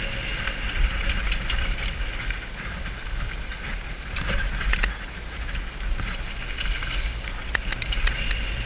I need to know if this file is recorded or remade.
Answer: recorded